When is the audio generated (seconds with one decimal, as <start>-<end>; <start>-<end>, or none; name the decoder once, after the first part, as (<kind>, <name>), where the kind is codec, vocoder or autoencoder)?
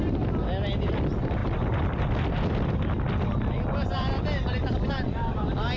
none